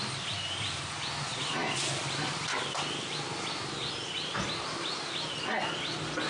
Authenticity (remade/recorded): recorded